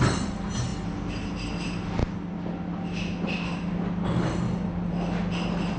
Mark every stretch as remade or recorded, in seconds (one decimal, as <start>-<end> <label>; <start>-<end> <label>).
0.0-5.8 recorded